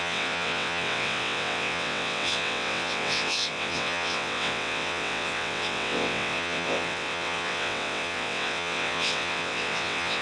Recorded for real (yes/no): no